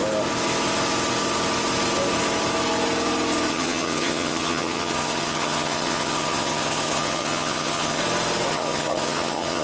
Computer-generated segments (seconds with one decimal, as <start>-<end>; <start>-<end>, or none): 3.5-8.0; 8.5-9.6